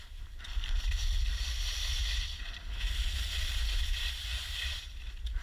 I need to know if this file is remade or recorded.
recorded